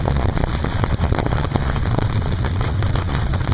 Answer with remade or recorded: remade